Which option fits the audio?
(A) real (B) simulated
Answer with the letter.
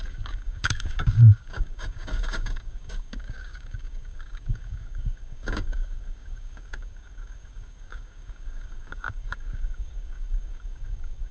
B